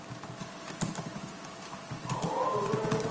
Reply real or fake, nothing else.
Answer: real